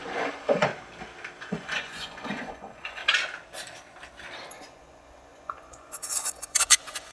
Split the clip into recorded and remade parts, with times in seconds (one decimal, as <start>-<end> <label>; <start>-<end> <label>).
0.0-0.7 remade; 0.7-1.4 recorded; 1.4-3.0 remade; 3.0-4.5 recorded; 4.5-7.1 remade